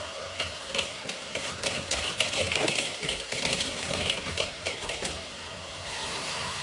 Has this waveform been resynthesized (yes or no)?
yes